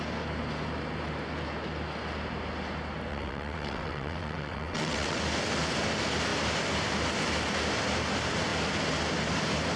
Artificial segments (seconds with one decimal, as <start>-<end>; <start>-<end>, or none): 3.1-5.2